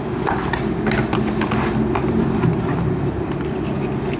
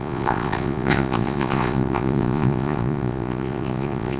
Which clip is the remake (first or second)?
second